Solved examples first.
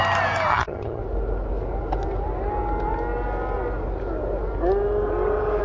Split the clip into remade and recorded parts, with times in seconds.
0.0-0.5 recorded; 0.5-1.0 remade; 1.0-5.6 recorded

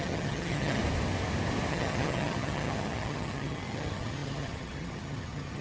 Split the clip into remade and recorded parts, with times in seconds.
0.0-0.8 remade; 0.8-1.7 recorded; 1.7-5.6 remade

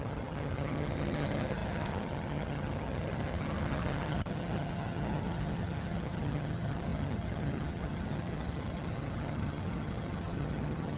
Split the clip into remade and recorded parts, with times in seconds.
0.0-11.0 remade